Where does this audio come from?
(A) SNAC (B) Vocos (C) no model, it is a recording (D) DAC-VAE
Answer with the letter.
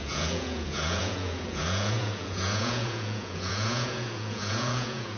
B